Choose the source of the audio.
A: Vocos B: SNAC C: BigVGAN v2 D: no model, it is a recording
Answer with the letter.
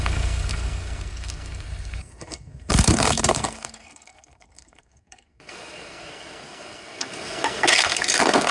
B